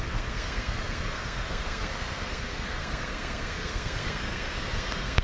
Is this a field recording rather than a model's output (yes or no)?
no